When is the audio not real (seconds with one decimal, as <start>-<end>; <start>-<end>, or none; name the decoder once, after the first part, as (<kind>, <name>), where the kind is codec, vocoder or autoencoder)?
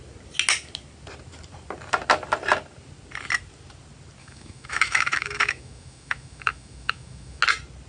4.2-7.4 (autoencoder, DAC-VAE)